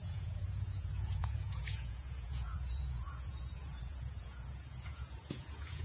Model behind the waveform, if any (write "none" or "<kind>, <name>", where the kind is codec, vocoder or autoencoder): vocoder, Vocos